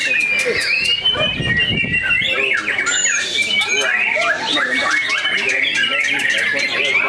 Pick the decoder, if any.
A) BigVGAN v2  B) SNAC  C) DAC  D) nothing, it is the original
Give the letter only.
D